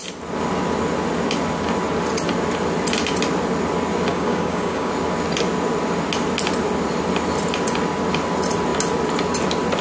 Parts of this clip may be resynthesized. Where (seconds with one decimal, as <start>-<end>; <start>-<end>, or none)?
4.1-4.9